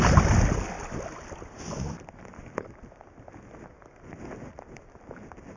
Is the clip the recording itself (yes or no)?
yes